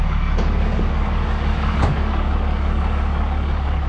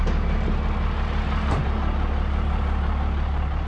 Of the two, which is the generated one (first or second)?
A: first